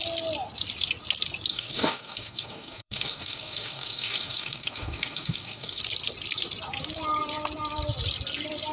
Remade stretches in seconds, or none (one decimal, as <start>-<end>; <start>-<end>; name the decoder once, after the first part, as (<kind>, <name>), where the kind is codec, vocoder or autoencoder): 1.5-5.8 (codec, DAC)